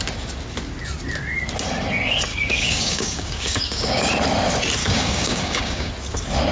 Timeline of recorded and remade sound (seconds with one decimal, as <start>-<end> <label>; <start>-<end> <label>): 0.0-2.3 recorded; 2.3-4.1 remade; 4.1-4.8 recorded; 4.8-5.9 remade; 5.9-6.5 recorded

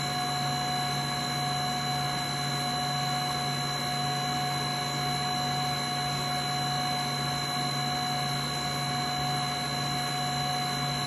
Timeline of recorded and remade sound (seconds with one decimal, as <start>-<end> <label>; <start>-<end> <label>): 0.0-11.1 recorded

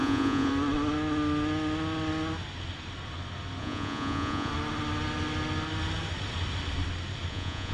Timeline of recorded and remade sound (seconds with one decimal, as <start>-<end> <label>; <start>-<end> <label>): 0.0-0.5 remade; 0.5-3.6 recorded; 3.6-4.5 remade; 4.5-7.3 recorded; 7.3-7.7 remade